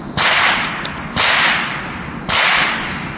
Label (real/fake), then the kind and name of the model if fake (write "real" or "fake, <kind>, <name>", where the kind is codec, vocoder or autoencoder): fake, vocoder, BigVGAN v2